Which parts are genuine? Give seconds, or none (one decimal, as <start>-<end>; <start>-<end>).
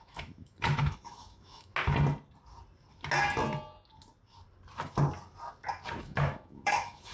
1.7-6.0